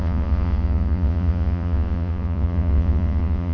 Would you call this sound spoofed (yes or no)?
yes